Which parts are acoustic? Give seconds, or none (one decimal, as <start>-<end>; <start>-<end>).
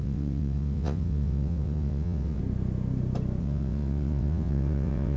2.4-3.4